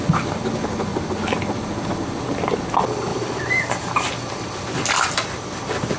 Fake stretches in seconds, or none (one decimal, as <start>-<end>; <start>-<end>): none